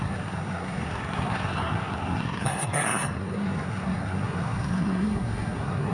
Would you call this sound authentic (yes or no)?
no